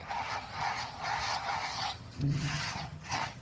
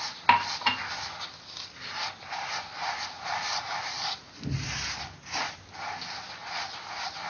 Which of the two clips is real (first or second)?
second